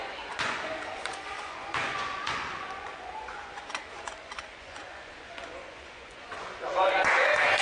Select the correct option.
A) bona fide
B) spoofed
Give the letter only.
B